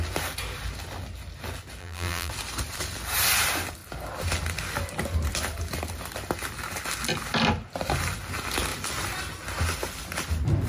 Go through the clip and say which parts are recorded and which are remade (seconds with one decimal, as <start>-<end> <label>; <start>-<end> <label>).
0.0-1.8 recorded; 1.8-2.3 remade; 2.3-10.7 recorded

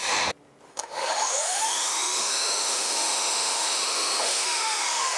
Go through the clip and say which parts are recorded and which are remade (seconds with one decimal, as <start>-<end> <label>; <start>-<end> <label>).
0.0-0.7 recorded; 0.7-5.2 remade